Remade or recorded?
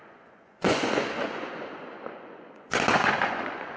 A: remade